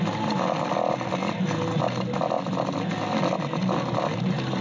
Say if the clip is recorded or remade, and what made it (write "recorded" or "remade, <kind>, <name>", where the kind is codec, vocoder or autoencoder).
recorded